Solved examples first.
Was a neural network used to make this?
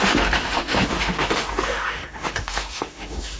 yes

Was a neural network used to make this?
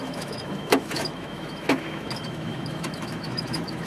yes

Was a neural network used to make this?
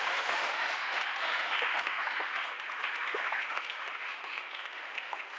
yes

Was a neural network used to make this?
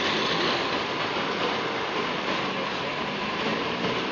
no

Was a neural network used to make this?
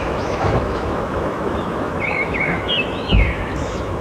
yes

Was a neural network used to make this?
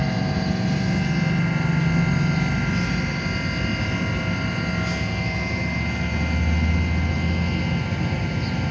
no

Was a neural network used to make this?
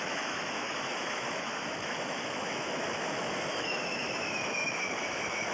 yes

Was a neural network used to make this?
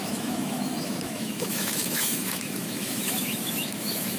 yes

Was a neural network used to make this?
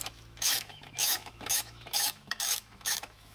yes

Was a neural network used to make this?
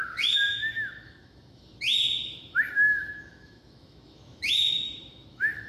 yes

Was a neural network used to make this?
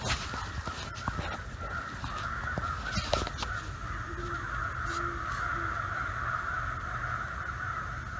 no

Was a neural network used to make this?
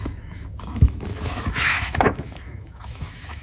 yes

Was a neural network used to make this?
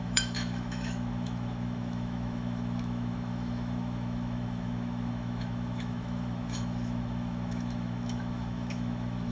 yes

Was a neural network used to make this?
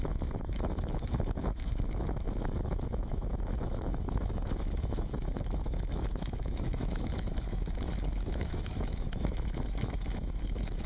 yes